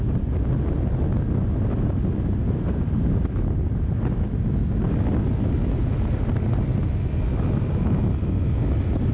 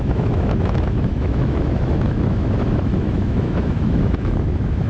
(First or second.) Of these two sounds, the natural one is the first